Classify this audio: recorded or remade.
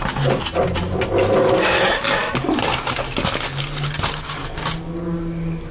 recorded